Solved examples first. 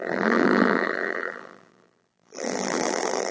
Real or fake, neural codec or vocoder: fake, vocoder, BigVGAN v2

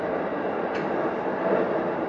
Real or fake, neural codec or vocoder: real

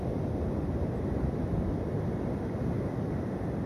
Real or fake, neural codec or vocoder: real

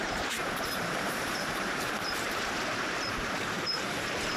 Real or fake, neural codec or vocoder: fake, vocoder, BigVGAN v2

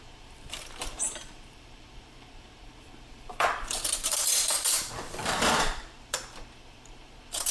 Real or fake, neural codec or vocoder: fake, vocoder, BigVGAN v2